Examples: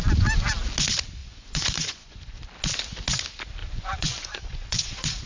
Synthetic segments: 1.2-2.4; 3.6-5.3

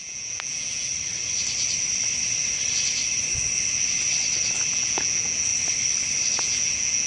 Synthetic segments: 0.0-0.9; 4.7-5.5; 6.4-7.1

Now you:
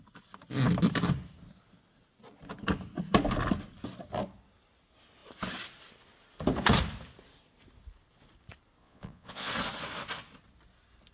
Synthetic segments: 8.8-9.5

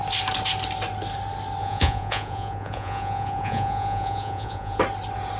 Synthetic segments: 1.6-4.8

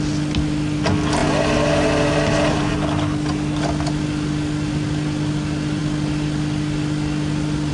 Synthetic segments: none

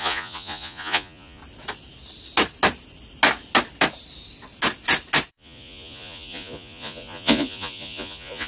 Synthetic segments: 0.0-1.4; 5.3-8.5

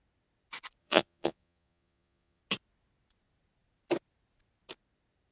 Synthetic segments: 0.8-2.4

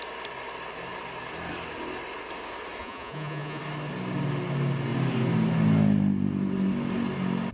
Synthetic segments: 2.8-3.6